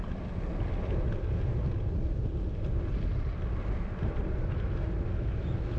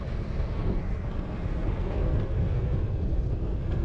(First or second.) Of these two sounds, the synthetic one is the second